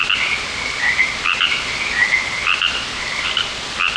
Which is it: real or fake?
fake